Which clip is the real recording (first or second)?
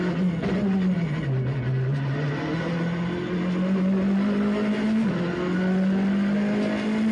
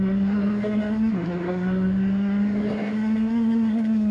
first